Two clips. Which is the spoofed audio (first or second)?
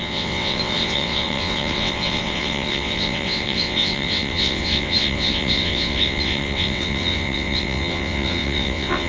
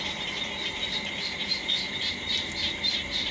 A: first